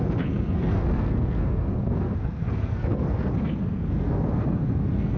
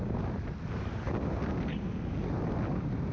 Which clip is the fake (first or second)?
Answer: first